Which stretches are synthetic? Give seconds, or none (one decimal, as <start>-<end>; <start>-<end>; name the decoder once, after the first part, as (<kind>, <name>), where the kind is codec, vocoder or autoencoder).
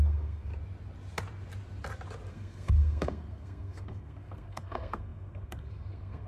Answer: 0.0-0.5 (codec, SNAC); 2.3-6.3